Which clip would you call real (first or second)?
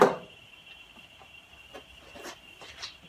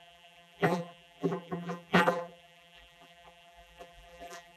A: first